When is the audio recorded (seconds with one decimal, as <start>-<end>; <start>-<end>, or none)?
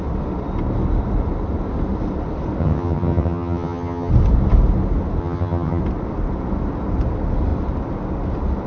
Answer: 0.0-2.6; 4.1-5.2; 5.8-8.7